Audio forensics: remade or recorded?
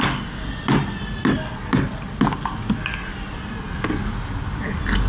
recorded